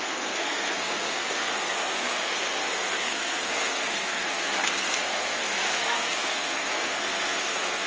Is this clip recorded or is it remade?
remade